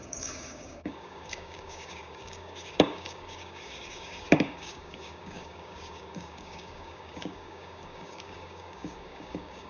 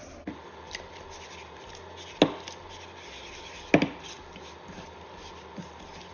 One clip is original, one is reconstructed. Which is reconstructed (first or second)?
first